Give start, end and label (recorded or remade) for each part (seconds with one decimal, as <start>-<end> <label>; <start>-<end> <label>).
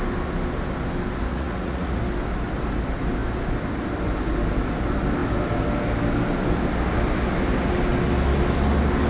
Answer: 0.0-1.3 recorded; 1.3-2.0 remade; 2.0-9.1 recorded